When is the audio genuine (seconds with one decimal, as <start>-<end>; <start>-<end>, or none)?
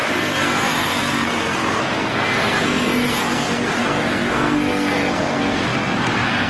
none